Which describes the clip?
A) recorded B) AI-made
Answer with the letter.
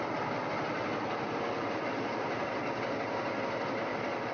A